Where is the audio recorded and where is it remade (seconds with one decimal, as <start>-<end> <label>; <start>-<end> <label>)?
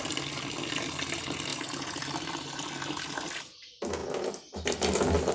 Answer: 0.0-5.3 recorded